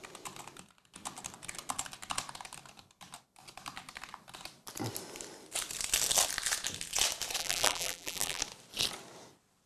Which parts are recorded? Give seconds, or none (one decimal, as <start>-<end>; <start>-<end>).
0.0-7.4; 8.4-9.7

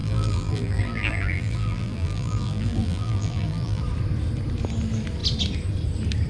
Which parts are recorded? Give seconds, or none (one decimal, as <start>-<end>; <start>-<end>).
3.8-6.3

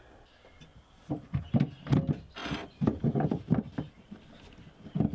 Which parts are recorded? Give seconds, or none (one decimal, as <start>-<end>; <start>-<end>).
0.0-0.7; 1.5-2.4; 4.0-5.1

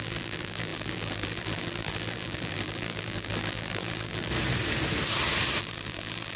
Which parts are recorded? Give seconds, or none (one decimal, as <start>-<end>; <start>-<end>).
4.3-5.6